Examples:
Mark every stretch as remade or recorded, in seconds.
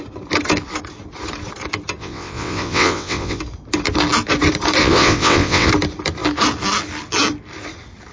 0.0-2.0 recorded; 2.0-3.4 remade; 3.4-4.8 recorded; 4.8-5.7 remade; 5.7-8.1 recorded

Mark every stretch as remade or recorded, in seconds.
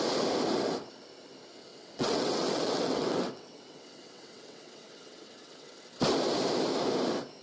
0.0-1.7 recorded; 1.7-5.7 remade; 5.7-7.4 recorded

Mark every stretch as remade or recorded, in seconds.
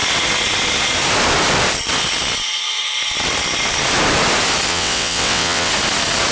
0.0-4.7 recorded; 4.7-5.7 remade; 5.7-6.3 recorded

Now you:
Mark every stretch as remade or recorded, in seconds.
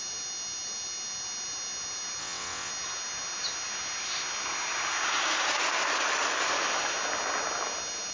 0.0-2.2 recorded; 2.2-2.7 remade; 2.7-8.1 recorded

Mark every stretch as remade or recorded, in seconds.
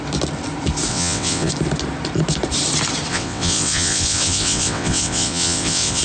0.0-0.9 recorded; 0.9-1.5 remade; 1.5-3.1 recorded; 3.1-6.0 remade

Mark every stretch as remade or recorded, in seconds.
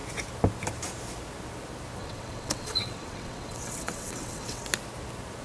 0.0-2.0 recorded; 2.0-4.6 remade; 4.6-5.4 recorded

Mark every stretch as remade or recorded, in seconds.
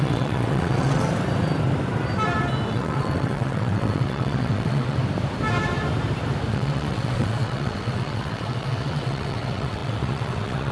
0.0-1.0 remade; 1.0-2.7 recorded; 2.7-5.0 remade; 5.0-6.5 recorded; 6.5-10.7 remade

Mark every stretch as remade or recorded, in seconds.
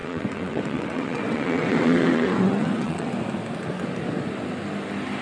0.0-3.1 remade; 3.1-5.2 recorded